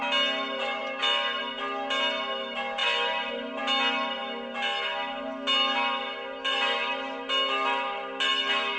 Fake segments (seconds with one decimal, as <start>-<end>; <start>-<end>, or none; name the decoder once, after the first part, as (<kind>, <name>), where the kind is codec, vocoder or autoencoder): none